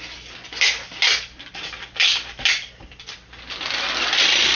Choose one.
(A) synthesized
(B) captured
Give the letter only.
B